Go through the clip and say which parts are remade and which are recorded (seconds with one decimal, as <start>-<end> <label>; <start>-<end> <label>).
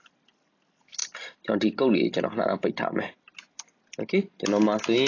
0.0-5.1 recorded